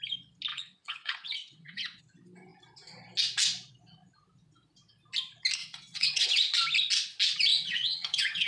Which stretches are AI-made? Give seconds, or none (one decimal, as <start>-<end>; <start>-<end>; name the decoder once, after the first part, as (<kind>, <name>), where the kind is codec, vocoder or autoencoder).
0.5-2.0 (vocoder, WaveNeXt); 5.6-6.3; 7.5-8.5